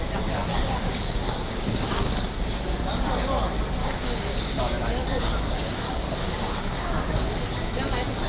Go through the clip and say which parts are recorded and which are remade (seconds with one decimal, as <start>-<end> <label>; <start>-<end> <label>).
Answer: 0.0-0.5 recorded; 0.5-2.3 remade; 2.3-3.8 recorded; 3.8-4.6 remade; 4.6-5.0 recorded; 5.0-7.1 remade; 7.1-8.3 recorded